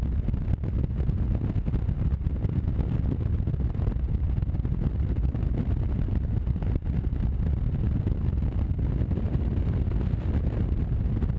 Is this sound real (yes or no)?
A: yes